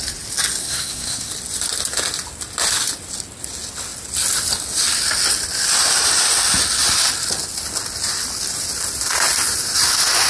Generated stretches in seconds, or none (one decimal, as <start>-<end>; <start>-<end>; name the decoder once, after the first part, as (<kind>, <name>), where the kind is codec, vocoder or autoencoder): 0.6-1.3 (codec, SNAC)